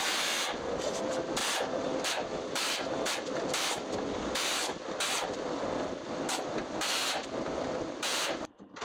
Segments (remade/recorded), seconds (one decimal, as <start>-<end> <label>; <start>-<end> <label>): 0.0-1.4 recorded; 1.4-5.6 remade; 5.6-8.8 recorded